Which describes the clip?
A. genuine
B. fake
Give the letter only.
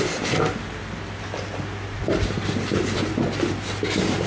A